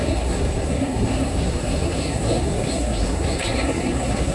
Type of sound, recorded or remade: remade